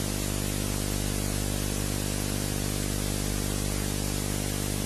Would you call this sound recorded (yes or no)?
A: yes